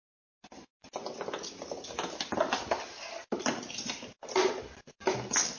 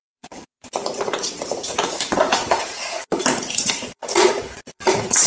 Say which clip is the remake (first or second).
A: second